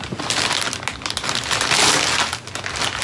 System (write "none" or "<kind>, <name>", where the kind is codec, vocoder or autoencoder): none